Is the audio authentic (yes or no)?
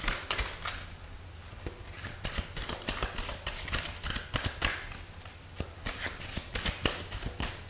yes